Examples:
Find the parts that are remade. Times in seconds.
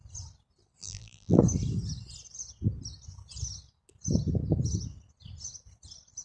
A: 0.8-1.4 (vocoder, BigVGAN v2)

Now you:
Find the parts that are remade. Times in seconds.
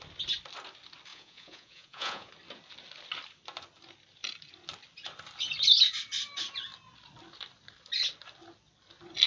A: 1.1-2.3 (vocoder, Vocos)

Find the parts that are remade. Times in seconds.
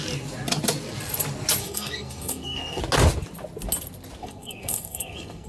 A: 1.6-2.8 (codec, SNAC); 4.2-5.5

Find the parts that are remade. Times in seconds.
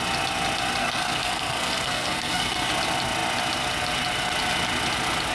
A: 0.8-2.7 (codec, SNAC)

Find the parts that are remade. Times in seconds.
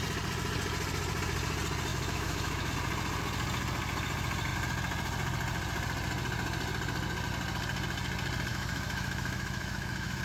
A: 1.9-2.7 (autoencoder, DAC-VAE); 8.5-10.2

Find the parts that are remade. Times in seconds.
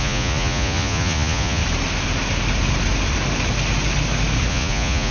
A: 0.0-1.6 (vocoder, Vocos); 4.5-5.1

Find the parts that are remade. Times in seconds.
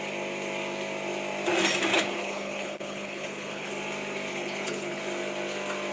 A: 1.9-3.7 (codec, HILCodec); 4.3-5.0